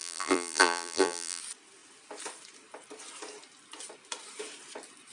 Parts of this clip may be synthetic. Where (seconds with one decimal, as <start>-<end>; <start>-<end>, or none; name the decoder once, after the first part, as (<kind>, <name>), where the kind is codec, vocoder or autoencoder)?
0.0-1.4 (vocoder, BigVGAN v2)